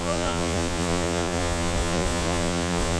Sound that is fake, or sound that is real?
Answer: fake